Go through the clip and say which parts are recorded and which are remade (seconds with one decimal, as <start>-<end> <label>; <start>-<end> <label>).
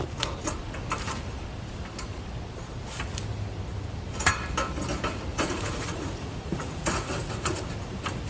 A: 0.0-5.3 recorded; 5.3-7.6 remade; 7.6-8.3 recorded